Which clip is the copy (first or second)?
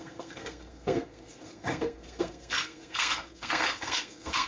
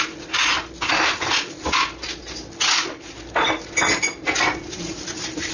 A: first